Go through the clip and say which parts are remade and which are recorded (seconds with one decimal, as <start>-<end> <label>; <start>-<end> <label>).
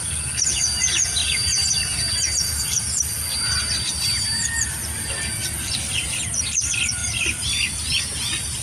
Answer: 0.0-1.2 recorded; 1.2-3.0 remade; 3.0-5.4 recorded; 5.4-6.2 remade; 6.2-8.6 recorded